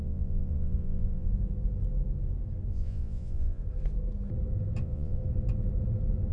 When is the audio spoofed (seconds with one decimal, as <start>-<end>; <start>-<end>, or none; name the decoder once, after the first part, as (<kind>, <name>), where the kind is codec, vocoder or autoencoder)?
0.0-1.3 (vocoder, Vocos); 2.7-3.6; 4.8-5.2